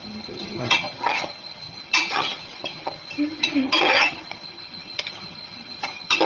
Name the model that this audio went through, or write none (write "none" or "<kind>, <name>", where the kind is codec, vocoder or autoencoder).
vocoder, HiFi-GAN